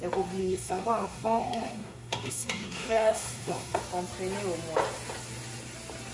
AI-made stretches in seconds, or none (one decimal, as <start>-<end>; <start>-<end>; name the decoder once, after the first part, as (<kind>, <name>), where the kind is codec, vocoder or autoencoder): 0.4-3.8 (codec, SNAC)